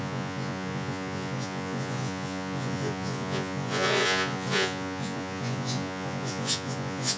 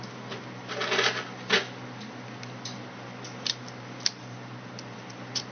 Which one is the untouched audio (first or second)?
second